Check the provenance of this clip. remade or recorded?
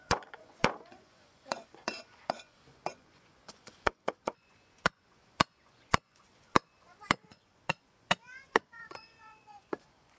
remade